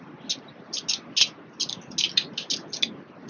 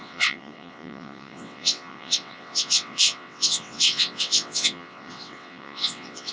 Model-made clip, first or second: second